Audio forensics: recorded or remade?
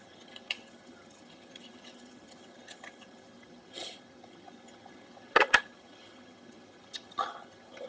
remade